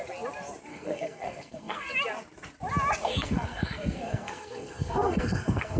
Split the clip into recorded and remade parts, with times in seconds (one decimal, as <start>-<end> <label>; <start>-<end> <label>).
0.0-0.7 recorded; 0.7-1.9 remade; 1.9-3.0 recorded; 3.0-5.8 remade